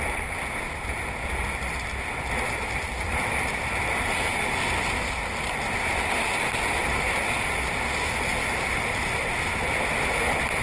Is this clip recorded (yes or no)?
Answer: yes